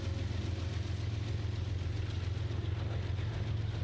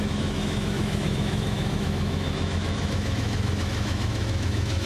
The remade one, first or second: second